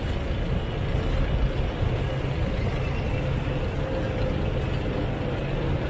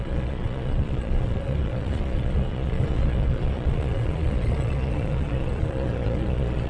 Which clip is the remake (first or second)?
second